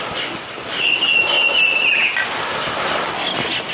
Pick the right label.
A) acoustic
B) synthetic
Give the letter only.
A